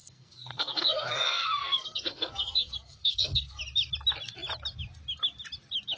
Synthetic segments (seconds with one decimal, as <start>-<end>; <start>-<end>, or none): 0.0-3.6